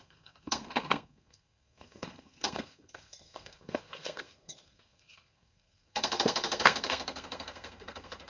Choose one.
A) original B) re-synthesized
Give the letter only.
B